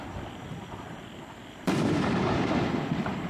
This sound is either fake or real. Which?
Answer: fake